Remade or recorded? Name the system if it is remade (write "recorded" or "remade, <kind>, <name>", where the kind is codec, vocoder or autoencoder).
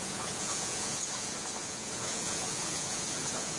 remade, vocoder, Vocos